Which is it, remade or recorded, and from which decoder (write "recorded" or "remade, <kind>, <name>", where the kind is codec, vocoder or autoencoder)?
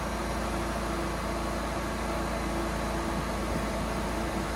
recorded